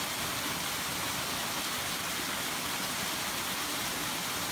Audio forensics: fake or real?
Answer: real